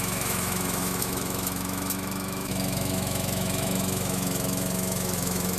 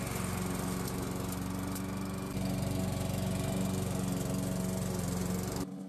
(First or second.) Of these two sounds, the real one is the second